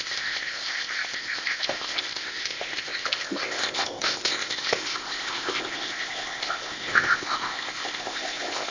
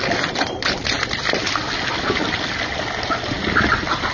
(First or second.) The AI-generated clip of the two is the first